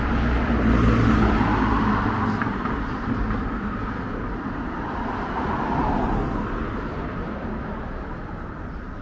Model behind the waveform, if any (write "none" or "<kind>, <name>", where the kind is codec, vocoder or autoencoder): vocoder, BigVGAN v2